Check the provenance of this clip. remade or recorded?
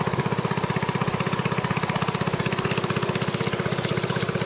recorded